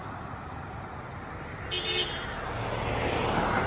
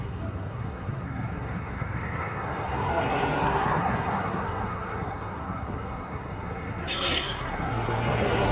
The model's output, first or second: second